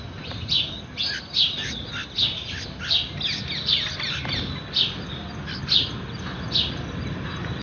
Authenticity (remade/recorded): recorded